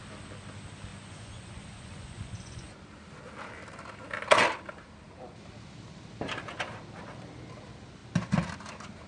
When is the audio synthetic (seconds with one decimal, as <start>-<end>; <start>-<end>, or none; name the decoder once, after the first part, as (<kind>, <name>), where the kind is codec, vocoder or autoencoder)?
0.9-2.8 (vocoder, Vocos)

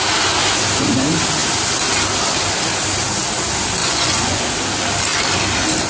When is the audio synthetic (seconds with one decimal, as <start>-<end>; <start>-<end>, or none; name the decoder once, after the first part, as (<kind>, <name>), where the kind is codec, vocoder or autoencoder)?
3.8-4.4 (vocoder, Vocos)

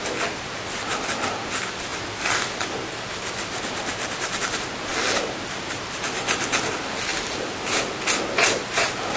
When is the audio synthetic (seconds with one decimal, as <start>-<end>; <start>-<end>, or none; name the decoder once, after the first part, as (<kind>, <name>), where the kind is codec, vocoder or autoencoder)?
none

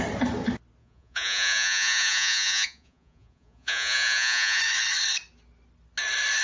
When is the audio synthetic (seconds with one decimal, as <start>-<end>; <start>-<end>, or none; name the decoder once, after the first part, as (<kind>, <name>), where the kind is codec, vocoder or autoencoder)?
0.8-4.6 (vocoder, Vocos)